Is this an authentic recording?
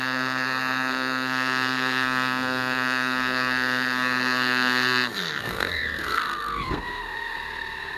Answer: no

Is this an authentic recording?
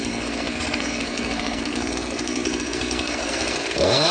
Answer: no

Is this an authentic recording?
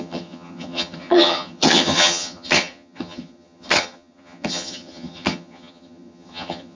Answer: no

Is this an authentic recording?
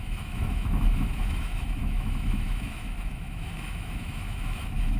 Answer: no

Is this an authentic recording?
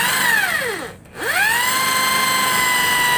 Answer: yes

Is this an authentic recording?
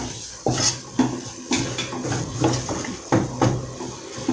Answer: yes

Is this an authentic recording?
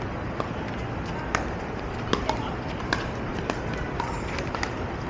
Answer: yes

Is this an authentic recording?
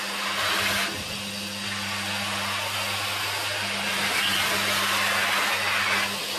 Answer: yes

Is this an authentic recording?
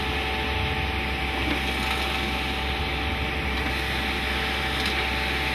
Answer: yes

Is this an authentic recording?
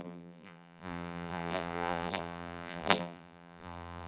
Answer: no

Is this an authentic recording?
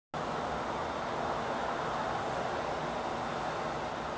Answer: yes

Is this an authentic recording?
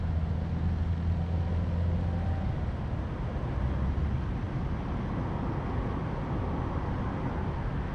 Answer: yes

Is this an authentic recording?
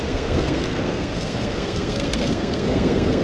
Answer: no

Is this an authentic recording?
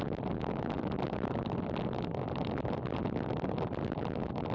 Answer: yes